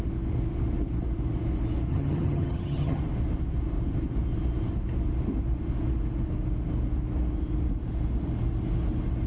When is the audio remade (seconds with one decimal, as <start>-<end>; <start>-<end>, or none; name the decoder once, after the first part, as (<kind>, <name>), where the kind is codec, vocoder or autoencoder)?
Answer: 1.9-3.0 (vocoder, HiFi-GAN)